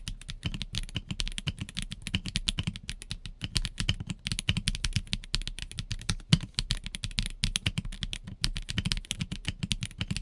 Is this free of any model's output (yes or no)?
yes